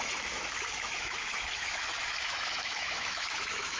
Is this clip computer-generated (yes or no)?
yes